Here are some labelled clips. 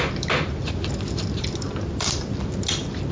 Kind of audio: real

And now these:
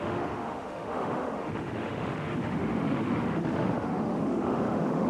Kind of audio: fake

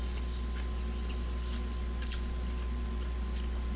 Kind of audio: real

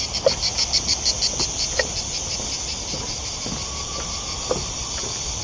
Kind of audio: real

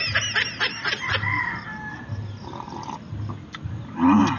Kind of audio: real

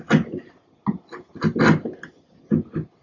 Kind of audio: real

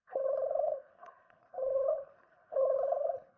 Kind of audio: fake